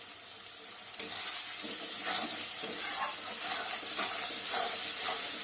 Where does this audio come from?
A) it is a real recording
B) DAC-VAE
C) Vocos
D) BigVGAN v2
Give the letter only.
A